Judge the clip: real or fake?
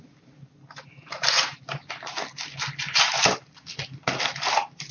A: real